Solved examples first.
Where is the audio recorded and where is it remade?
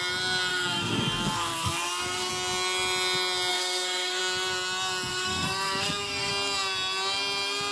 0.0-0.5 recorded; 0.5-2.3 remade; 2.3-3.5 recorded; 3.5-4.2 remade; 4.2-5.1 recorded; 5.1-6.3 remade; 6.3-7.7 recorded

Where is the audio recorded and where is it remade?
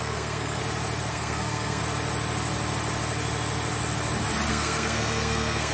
0.0-0.6 remade; 0.6-1.1 recorded; 1.1-1.8 remade; 1.8-4.5 recorded; 4.5-5.7 remade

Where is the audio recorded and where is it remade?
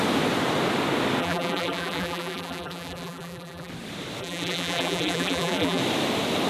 0.0-1.2 recorded; 1.2-3.7 remade; 3.7-4.2 recorded; 4.2-5.8 remade; 5.8-6.5 recorded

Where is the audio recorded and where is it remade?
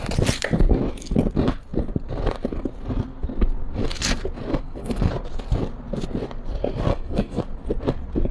0.0-4.5 recorded; 4.5-5.1 remade; 5.1-6.9 recorded; 6.9-7.4 remade; 7.4-8.3 recorded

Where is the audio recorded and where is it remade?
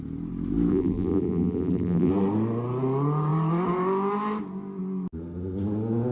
0.0-0.7 recorded; 0.7-2.1 remade; 2.1-6.1 recorded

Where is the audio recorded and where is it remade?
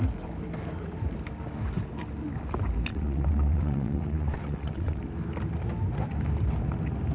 0.0-2.9 recorded; 2.9-5.0 remade; 5.0-7.1 recorded